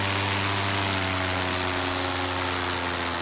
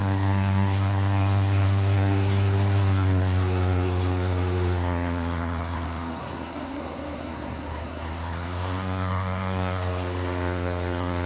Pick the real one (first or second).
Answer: first